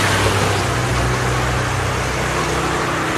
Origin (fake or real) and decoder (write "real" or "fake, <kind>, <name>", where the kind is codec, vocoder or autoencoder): real